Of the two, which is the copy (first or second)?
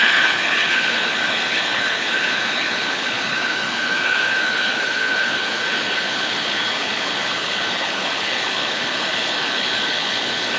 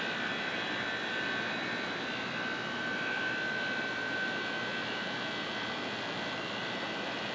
first